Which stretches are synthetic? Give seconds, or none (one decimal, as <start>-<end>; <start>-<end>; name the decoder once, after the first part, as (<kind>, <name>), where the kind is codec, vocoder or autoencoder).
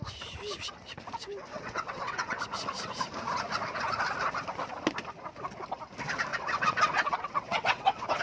1.5-2.4 (vocoder, WaveNeXt); 6.3-8.2